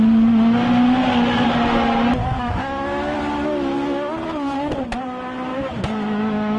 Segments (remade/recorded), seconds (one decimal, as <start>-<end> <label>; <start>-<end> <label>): 0.0-2.2 recorded; 2.2-3.2 remade; 3.2-5.5 recorded; 5.5-6.6 remade